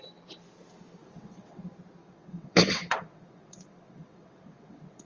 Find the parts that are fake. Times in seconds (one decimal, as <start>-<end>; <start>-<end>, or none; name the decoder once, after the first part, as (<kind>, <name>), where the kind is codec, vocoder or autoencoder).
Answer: 1.0-1.6 (vocoder, WaveNeXt); 2.0-5.1